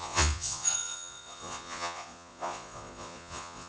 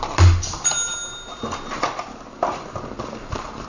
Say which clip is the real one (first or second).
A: second